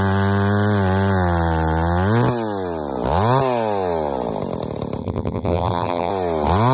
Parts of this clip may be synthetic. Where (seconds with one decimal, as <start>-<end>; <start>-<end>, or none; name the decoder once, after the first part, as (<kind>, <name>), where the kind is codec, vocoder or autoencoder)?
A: 5.0-6.1 (vocoder, BigVGAN v2)